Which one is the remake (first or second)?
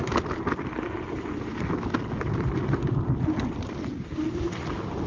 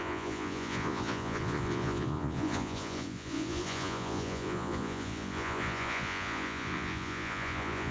second